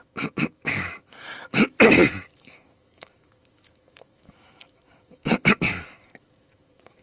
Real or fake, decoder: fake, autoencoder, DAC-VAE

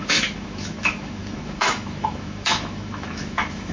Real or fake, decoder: fake, autoencoder, DAC-VAE